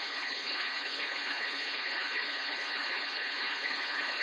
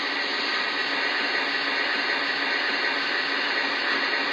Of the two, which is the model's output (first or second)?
first